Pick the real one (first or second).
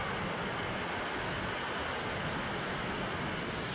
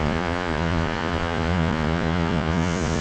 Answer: first